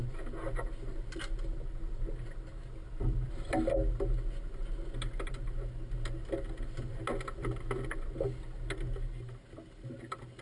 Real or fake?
real